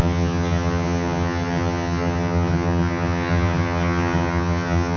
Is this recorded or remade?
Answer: remade